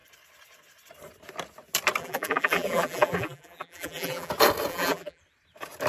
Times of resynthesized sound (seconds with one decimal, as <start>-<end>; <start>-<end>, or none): 2.0-4.3; 4.7-5.2